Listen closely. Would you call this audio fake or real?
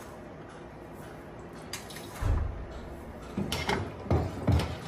real